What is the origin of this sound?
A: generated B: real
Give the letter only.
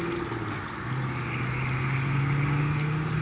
B